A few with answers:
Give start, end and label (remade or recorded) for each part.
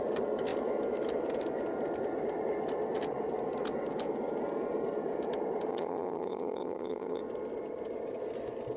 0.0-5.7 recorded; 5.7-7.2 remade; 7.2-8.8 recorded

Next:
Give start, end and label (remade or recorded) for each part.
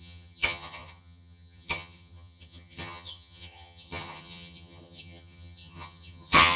0.0-6.6 remade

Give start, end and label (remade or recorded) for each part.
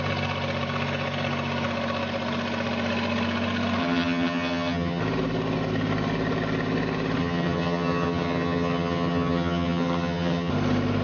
0.0-3.8 recorded; 3.8-5.0 remade; 5.0-7.2 recorded; 7.2-10.5 remade; 10.5-11.0 recorded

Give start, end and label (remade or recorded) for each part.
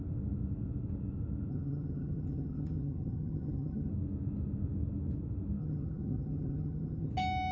0.0-1.5 recorded; 1.5-3.9 remade; 3.9-5.6 recorded; 5.6-7.1 remade; 7.1-7.5 recorded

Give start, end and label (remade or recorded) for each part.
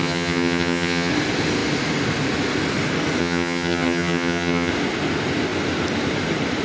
0.0-1.1 remade; 1.1-3.2 recorded; 3.2-4.7 remade; 4.7-6.6 recorded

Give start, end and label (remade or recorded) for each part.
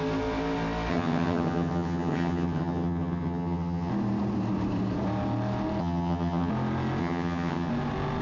0.0-0.9 recorded; 0.9-3.9 remade; 3.9-5.8 recorded; 5.8-6.5 remade; 6.5-7.0 recorded; 7.0-7.7 remade; 7.7-8.2 recorded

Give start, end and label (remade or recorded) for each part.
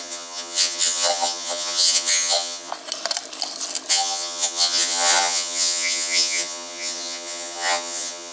0.0-2.7 remade; 2.7-3.9 recorded; 3.9-8.3 remade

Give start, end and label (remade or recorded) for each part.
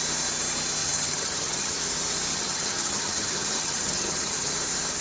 0.0-0.8 recorded; 0.8-1.8 remade; 1.8-2.3 recorded; 2.3-4.5 remade; 4.5-5.0 recorded